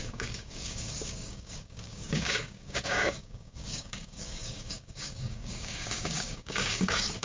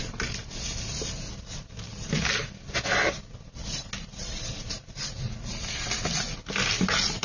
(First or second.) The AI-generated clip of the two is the first